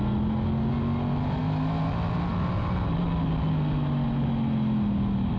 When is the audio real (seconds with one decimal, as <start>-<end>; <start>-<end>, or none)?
0.0-5.4